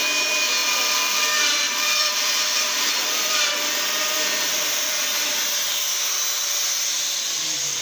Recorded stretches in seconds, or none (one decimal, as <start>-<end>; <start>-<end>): 0.0-0.6; 4.6-7.8